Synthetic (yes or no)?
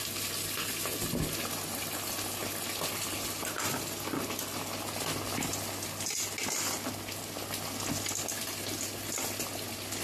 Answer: no